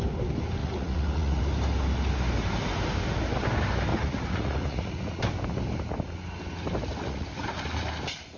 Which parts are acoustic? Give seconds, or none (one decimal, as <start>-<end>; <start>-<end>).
0.0-0.6; 1.4-3.9; 5.2-6.9; 7.5-8.4